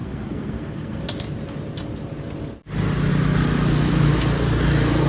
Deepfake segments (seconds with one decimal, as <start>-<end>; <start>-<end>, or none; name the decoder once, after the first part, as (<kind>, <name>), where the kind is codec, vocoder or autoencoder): 0.0-1.0 (codec, SNAC)